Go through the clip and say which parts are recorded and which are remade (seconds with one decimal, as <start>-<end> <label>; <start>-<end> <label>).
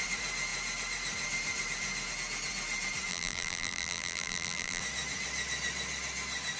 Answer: 0.0-3.1 recorded; 3.1-4.8 remade; 4.8-6.6 recorded